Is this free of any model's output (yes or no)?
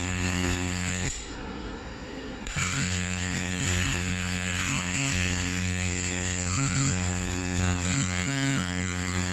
no